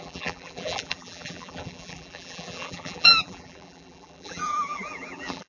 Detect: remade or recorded remade